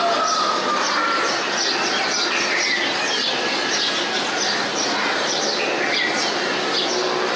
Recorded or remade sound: recorded